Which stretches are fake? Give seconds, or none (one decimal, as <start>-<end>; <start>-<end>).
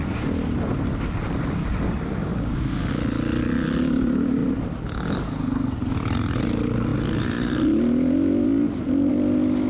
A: 2.2-2.9